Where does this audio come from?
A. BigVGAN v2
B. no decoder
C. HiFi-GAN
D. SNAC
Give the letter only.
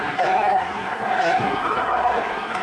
D